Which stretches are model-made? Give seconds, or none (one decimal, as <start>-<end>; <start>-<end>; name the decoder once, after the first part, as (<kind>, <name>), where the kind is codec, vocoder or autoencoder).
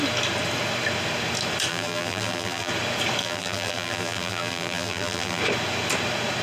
1.7-2.7 (vocoder, BigVGAN v2); 3.2-5.4